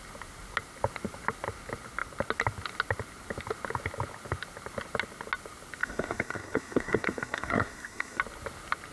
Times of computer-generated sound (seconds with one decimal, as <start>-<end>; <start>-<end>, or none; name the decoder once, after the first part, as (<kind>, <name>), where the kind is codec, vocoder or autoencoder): 5.8-8.2 (codec, SNAC)